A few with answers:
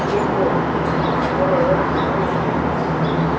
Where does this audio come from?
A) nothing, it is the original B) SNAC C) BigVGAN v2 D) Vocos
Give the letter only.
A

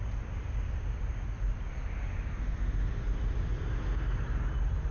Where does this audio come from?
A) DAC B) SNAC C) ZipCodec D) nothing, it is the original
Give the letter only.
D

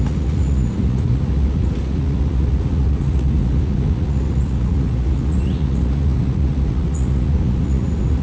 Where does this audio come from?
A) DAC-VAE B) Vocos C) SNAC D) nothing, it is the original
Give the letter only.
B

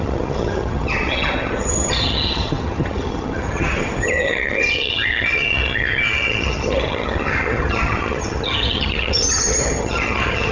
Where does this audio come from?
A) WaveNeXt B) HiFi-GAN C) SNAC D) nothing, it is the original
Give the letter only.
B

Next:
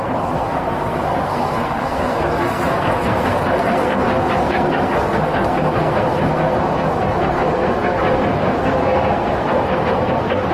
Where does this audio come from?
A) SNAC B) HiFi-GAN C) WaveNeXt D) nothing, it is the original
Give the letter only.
A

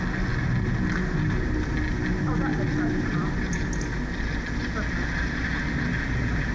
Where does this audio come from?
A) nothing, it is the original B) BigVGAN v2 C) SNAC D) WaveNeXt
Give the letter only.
A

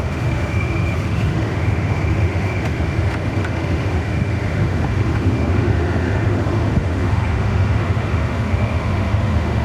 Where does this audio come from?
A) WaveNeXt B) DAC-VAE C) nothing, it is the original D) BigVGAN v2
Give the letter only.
B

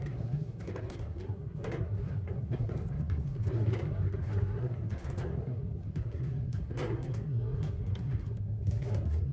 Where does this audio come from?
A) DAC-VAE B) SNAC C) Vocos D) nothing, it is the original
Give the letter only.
B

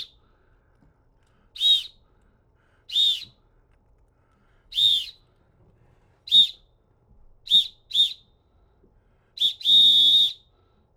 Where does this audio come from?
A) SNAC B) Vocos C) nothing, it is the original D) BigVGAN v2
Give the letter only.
C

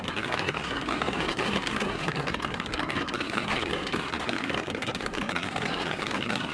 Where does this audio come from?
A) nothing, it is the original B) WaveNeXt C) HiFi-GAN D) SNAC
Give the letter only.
D